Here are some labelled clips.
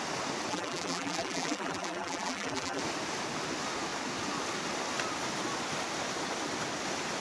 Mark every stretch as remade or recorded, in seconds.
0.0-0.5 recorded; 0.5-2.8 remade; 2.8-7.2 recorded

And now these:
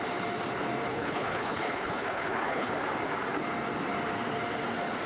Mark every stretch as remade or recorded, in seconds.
0.0-0.9 recorded; 0.9-2.7 remade; 2.7-5.1 recorded